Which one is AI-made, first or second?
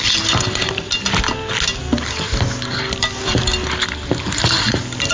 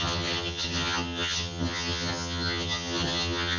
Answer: second